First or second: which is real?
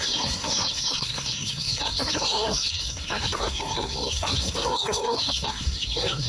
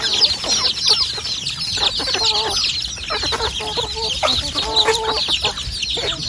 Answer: second